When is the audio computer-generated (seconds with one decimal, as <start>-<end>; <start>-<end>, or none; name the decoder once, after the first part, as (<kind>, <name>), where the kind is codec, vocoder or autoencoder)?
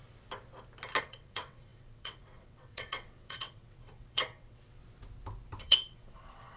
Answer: 1.0-4.8 (vocoder, WaveNeXt); 5.6-6.6